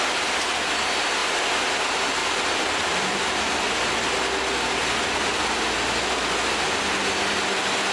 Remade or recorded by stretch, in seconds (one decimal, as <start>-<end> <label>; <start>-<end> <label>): 0.0-2.2 recorded; 2.2-3.7 remade; 3.7-7.9 recorded